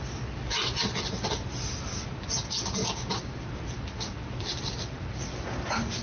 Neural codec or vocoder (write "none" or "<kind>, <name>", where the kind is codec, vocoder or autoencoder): none